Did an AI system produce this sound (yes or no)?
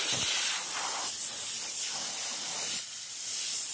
no